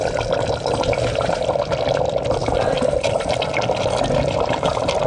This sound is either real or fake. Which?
real